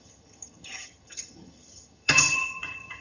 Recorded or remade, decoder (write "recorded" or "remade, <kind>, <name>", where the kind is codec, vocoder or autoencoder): remade, vocoder, HiFi-GAN